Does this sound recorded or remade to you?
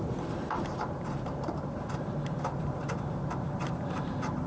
remade